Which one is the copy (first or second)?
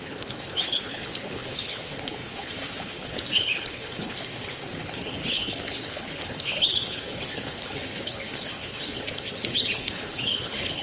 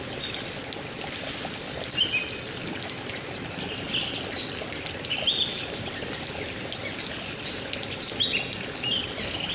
first